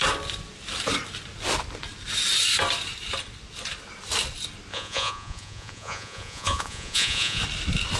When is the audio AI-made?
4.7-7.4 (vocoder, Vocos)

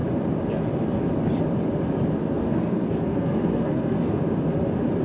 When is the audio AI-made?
2.2-4.2 (codec, SNAC)